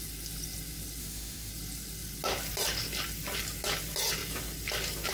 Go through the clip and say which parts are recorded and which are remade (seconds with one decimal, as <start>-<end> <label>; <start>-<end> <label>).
0.0-1.0 recorded; 1.0-1.5 remade; 1.5-5.1 recorded

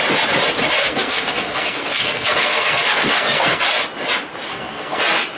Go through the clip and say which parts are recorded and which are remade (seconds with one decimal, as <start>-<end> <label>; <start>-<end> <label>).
0.0-0.8 recorded; 0.8-3.6 remade; 3.6-4.5 recorded; 4.5-5.0 remade; 5.0-5.4 recorded

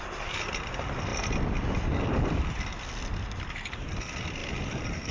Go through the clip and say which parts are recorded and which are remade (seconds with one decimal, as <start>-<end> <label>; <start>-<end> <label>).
0.0-5.1 recorded

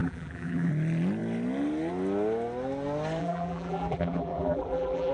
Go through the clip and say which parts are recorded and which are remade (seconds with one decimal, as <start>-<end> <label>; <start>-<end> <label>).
0.0-0.7 remade; 0.7-3.2 recorded; 3.2-5.1 remade

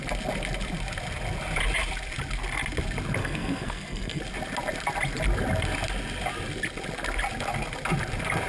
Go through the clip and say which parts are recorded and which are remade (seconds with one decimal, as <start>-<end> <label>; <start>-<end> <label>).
0.0-3.2 recorded; 3.2-4.2 remade; 4.2-8.5 recorded

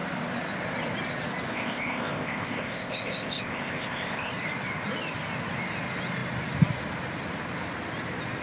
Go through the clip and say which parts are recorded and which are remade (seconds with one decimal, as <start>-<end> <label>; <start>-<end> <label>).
0.0-1.5 recorded; 1.5-4.3 remade; 4.3-8.4 recorded

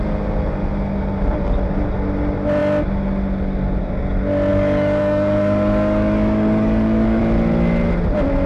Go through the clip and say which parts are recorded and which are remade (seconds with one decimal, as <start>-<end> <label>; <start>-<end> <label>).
0.0-4.5 recorded; 4.5-7.2 remade; 7.2-8.5 recorded